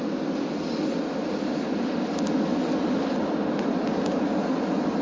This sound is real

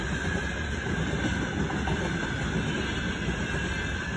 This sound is real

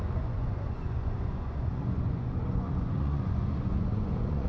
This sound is fake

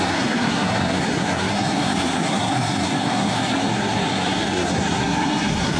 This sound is fake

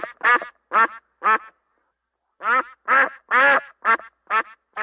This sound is real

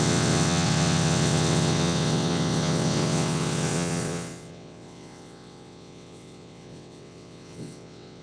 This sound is fake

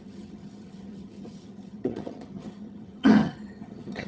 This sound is fake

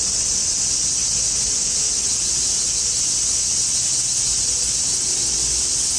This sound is real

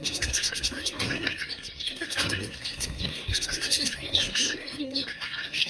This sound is fake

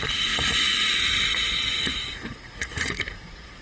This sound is fake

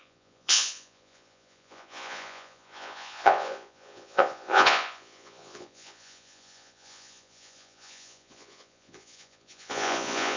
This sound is fake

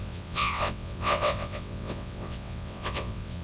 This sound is fake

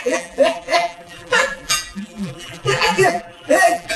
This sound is fake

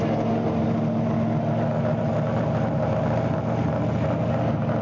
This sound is real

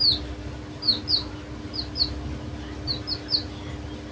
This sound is real